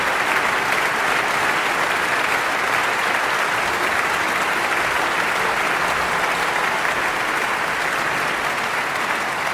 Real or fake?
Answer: real